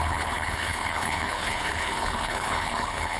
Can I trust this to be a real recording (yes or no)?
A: no